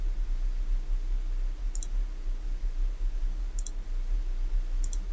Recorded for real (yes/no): yes